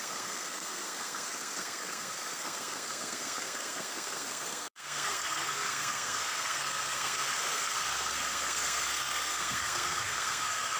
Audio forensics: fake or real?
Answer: fake